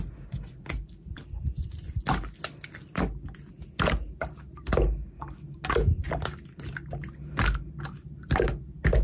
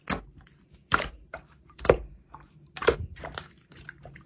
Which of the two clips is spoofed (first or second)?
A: second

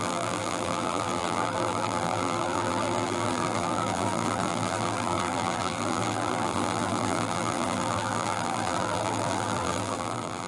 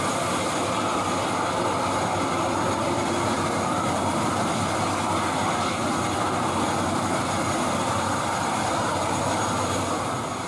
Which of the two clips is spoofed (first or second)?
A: first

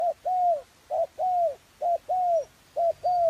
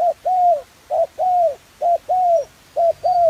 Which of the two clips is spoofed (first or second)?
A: second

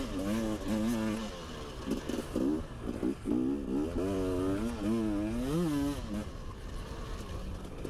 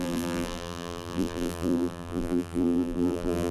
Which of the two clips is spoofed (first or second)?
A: second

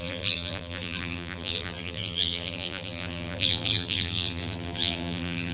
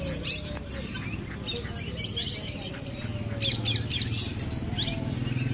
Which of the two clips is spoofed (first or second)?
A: first